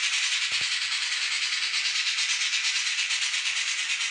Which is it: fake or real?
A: real